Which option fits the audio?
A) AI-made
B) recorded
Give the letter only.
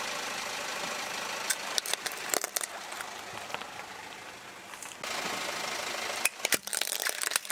B